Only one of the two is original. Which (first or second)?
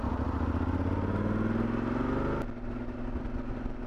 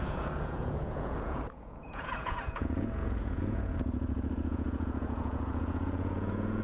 first